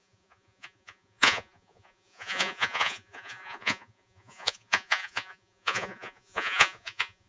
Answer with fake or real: fake